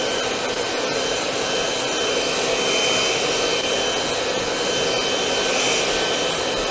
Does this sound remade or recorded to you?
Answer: recorded